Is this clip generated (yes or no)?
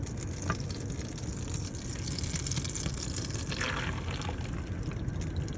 no